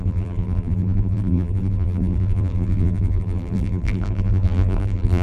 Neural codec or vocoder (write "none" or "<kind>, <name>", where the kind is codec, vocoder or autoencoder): vocoder, BigVGAN v2